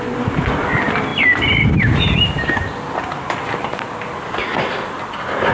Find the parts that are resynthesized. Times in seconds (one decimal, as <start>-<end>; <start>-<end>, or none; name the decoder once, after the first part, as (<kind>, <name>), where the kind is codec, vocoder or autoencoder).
none